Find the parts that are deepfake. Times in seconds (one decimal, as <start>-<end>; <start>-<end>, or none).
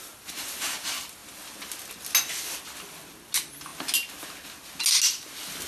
none